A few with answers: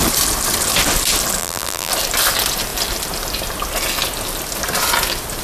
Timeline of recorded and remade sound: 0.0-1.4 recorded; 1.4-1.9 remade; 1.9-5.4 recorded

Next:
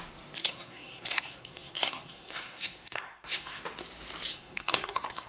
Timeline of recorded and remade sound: 0.0-0.4 recorded; 0.4-3.6 remade; 3.6-4.3 recorded; 4.3-5.3 remade

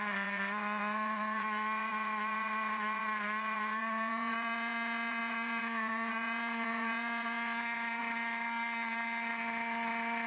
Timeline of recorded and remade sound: 0.0-8.0 remade; 8.0-10.3 recorded

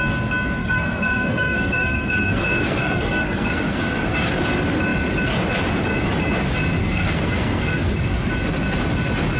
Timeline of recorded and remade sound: 0.0-0.6 recorded; 0.6-4.3 remade; 4.3-6.8 recorded; 6.8-8.3 remade; 8.3-9.4 recorded